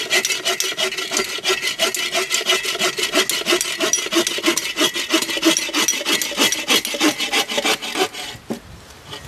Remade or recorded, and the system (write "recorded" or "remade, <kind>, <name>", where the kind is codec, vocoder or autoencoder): recorded